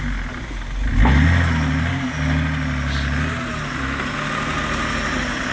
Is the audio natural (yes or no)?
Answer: yes